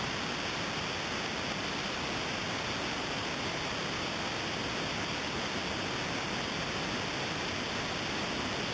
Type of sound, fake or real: real